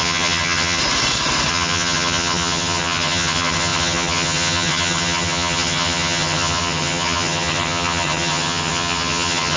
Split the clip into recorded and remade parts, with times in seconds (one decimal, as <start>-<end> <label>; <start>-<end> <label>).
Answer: 0.0-0.8 remade; 0.8-1.5 recorded; 1.5-9.6 remade